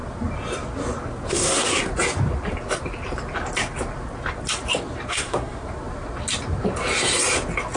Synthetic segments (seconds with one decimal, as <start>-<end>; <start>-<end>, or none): 1.3-1.9; 5.1-5.6